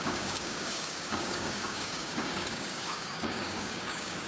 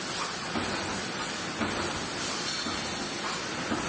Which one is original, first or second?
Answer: second